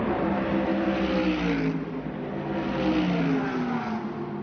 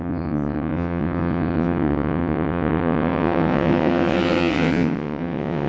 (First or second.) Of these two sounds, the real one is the first